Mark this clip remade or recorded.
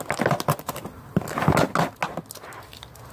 recorded